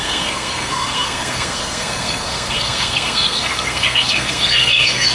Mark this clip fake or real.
fake